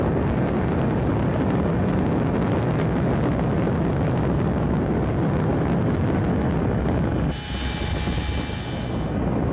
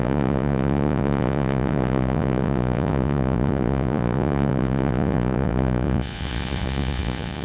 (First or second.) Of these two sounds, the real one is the first